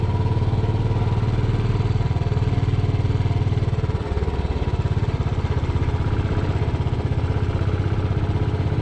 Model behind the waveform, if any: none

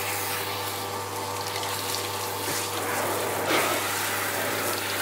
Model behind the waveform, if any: none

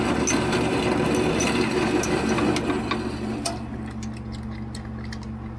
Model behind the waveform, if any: none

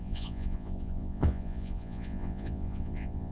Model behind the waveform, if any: vocoder, Vocos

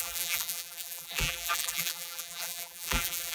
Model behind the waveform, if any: vocoder, BigVGAN v2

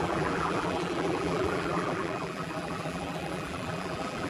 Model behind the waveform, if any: vocoder, BigVGAN v2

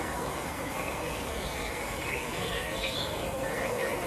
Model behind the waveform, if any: codec, SNAC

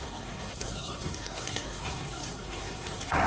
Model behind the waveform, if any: codec, SNAC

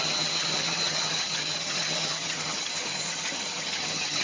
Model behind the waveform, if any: vocoder, HiFi-GAN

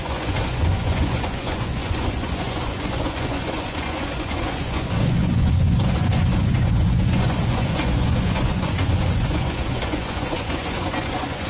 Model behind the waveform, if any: vocoder, Vocos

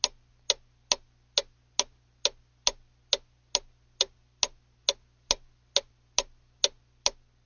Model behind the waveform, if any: none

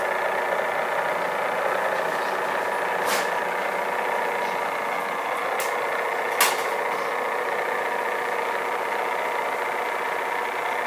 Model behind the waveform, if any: none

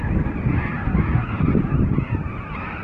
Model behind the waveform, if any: none